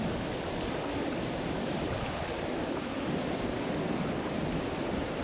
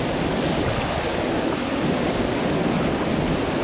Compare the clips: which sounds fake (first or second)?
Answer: first